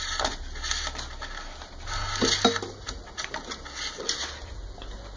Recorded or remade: recorded